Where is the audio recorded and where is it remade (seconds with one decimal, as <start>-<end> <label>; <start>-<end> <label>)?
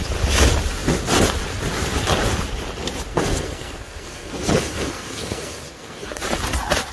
0.0-3.1 recorded; 3.1-6.2 remade; 6.2-6.9 recorded